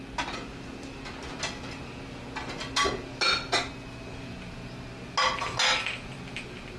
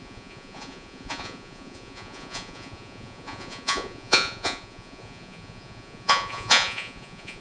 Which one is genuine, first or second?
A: first